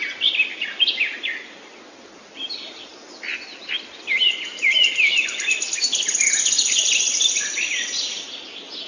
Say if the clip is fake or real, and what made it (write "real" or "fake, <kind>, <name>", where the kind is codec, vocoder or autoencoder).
real